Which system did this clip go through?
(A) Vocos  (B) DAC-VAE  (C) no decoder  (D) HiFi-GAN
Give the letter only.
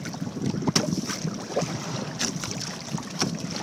C